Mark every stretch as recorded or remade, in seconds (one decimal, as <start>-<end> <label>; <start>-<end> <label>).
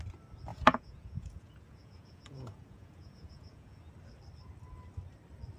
0.0-0.5 recorded; 0.5-3.9 remade; 3.9-5.6 recorded